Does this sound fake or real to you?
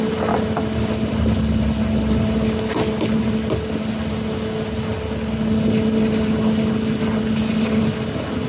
real